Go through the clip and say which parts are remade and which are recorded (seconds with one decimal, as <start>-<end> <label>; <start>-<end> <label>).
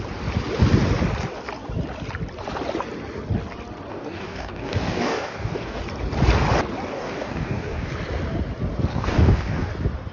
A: 0.0-3.9 recorded; 3.9-5.8 remade; 5.8-6.9 recorded; 6.9-7.9 remade; 7.9-8.9 recorded; 8.9-9.7 remade; 9.7-10.1 recorded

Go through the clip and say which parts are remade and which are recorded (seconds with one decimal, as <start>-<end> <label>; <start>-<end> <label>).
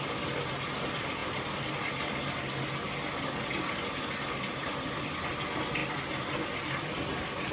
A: 0.0-4.6 recorded; 4.6-5.3 remade; 5.3-5.8 recorded; 5.8-7.5 remade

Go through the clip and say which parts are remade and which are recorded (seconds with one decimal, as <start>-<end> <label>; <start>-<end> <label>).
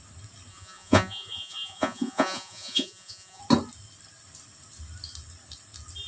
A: 0.0-0.5 recorded; 0.5-3.4 remade; 3.4-6.1 recorded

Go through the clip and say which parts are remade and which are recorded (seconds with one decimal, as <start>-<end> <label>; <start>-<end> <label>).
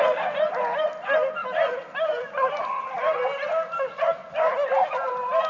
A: 0.0-5.5 recorded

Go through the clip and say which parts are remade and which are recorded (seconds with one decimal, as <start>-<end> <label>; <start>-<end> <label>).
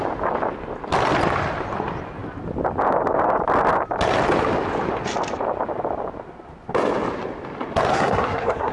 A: 0.0-7.9 recorded; 7.9-8.7 remade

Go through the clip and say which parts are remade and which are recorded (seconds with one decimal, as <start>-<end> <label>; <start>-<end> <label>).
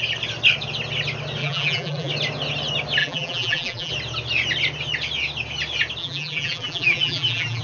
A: 0.0-1.4 recorded; 1.4-2.1 remade; 2.1-3.0 recorded; 3.0-3.9 remade; 3.9-6.0 recorded; 6.0-7.6 remade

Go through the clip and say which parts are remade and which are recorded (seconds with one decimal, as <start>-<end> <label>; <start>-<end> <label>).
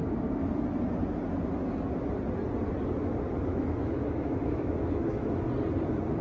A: 0.0-3.5 recorded; 3.5-5.4 remade; 5.4-6.2 recorded